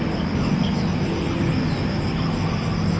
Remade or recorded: recorded